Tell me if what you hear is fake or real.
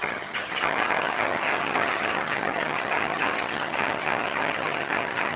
fake